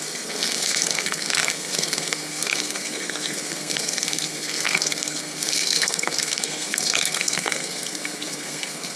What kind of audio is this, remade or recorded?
remade